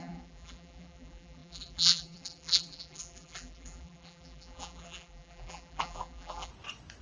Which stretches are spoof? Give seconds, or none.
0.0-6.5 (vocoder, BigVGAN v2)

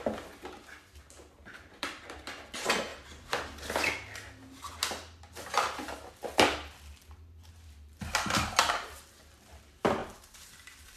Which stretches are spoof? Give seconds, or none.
1.4-2.0 (vocoder, BigVGAN v2); 10.0-11.0

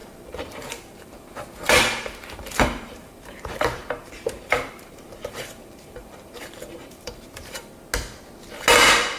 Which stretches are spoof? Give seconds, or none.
0.0-7.7 (vocoder, BigVGAN v2)